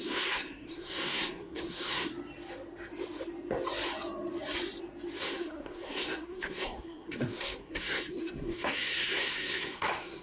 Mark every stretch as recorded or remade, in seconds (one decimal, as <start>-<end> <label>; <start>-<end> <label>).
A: 0.0-2.1 remade; 2.1-5.2 recorded; 5.2-10.2 remade